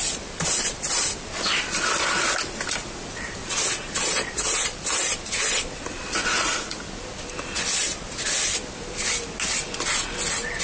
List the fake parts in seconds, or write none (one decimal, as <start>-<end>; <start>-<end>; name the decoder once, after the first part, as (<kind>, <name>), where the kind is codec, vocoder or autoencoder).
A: 3.4-4.1 (vocoder, Vocos); 6.2-6.8